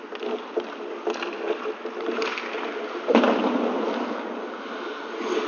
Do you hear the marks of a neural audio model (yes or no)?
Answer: no